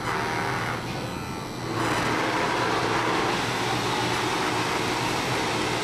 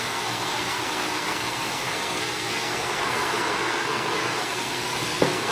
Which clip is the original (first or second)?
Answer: first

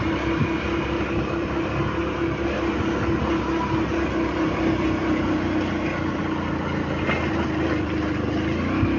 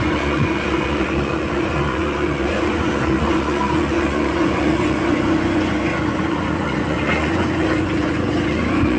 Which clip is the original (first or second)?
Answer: first